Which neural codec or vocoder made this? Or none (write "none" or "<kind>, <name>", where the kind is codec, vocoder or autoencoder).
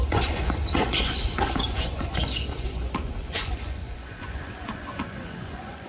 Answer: vocoder, Vocos